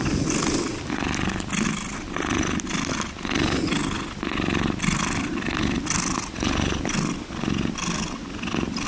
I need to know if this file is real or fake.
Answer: real